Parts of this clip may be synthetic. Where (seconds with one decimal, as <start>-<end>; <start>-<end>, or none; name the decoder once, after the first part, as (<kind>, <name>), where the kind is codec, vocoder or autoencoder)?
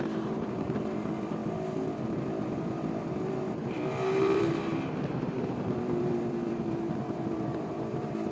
0.0-4.7 (vocoder, BigVGAN v2); 5.2-8.3